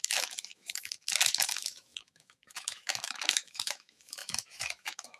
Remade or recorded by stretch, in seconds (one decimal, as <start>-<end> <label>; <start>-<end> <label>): 0.0-5.2 remade

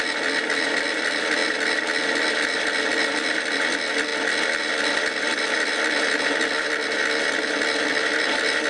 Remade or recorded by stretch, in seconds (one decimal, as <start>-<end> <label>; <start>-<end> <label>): 0.0-8.7 recorded